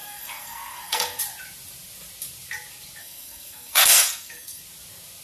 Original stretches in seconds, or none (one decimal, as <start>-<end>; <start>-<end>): 1.2-3.0; 4.6-5.2